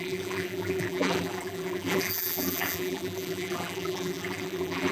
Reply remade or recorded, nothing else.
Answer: remade